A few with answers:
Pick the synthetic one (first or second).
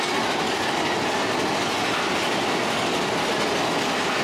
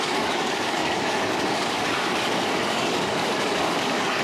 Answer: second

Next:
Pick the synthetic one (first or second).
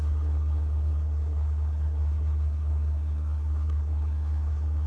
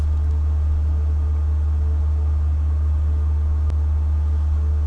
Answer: first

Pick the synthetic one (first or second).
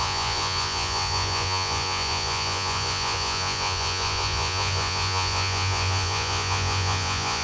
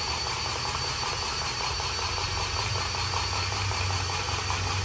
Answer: first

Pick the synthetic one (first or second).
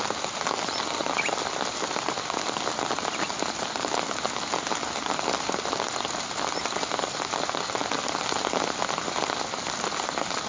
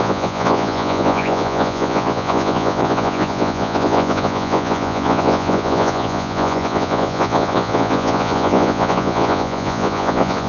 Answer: second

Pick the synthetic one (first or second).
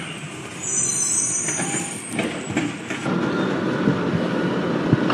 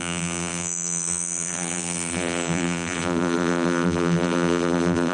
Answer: second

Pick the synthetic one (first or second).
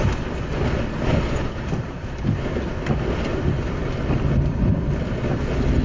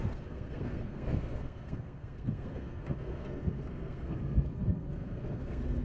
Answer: second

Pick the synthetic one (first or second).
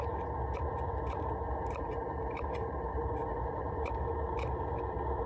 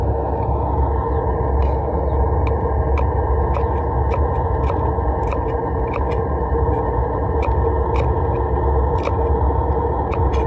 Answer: first